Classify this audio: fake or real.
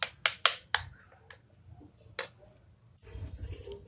real